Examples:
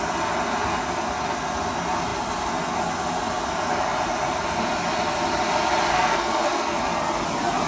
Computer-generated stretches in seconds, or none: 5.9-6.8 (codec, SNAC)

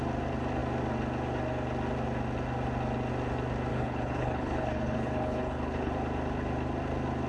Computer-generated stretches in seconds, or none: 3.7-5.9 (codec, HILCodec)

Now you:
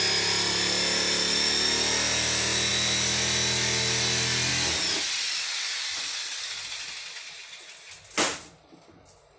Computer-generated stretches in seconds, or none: none

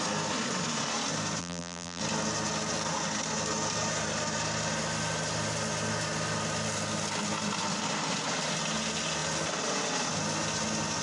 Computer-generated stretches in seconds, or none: 1.4-2.0 (vocoder, BigVGAN v2)